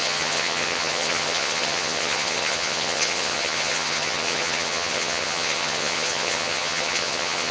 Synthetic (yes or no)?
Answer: yes